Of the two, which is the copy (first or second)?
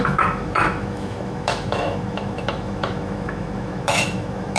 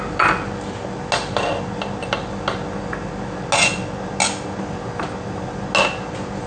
first